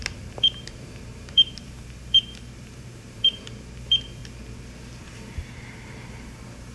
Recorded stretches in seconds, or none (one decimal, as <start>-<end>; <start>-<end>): 4.2-5.0